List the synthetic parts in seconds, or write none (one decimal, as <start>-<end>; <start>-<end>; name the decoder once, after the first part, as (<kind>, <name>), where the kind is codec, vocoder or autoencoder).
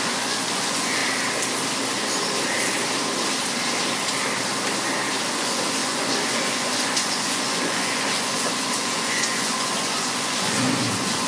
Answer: 0.0-1.0 (vocoder, Vocos); 5.3-11.3